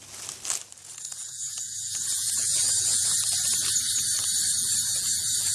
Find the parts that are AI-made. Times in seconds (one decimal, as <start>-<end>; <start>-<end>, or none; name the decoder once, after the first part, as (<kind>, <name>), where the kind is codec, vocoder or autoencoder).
0.8-3.1 (vocoder, Vocos)

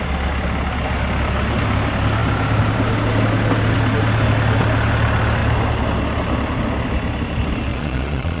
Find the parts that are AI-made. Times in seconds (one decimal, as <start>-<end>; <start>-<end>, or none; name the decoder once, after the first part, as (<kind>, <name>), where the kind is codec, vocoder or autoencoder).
7.7-8.4 (vocoder, Vocos)

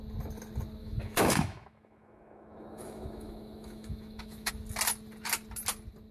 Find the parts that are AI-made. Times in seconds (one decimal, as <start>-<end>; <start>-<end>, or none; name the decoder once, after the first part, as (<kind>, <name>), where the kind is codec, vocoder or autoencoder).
0.8-4.5 (autoencoder, DAC-VAE)